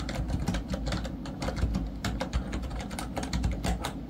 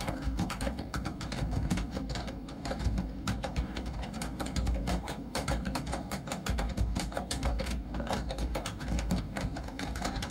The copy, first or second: second